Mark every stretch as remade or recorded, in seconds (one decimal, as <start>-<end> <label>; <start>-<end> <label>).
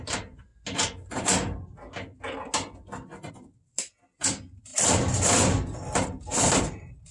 0.0-0.5 remade; 0.5-3.3 recorded; 3.3-7.1 remade